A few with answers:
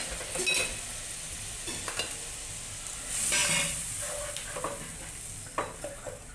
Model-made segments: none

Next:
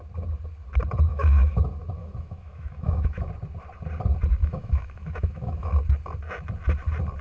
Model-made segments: 1.1-1.6 (autoencoder, DAC-VAE); 2.0-3.3; 4.4-5.7

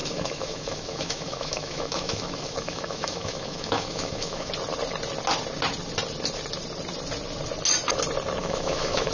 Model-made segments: 0.0-4.5 (autoencoder, DAC-VAE); 8.4-9.1

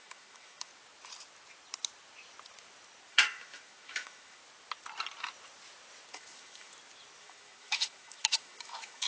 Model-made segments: 0.0-0.7 (autoencoder, DAC-VAE); 3.1-4.4; 6.1-6.7; 7.2-9.1